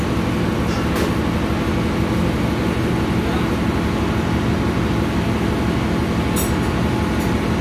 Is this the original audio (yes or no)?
yes